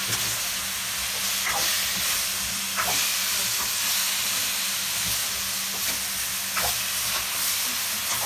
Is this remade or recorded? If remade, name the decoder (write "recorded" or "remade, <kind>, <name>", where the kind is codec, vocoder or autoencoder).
recorded